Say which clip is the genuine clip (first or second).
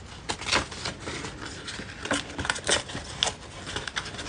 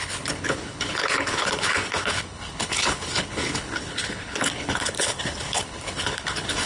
first